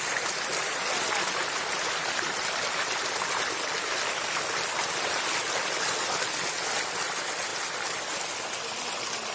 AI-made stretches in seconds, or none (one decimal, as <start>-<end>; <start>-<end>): none